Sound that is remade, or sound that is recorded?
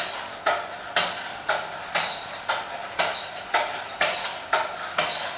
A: recorded